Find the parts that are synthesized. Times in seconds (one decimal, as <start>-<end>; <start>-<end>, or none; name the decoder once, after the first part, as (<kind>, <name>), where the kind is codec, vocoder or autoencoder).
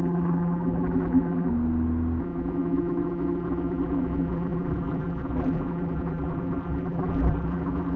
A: 0.0-1.5 (vocoder, BigVGAN v2); 2.2-8.0